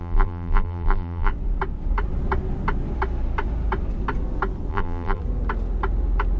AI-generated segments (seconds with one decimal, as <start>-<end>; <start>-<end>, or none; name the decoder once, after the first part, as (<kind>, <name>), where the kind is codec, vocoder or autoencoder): 0.0-1.3 (vocoder, BigVGAN v2); 4.7-5.2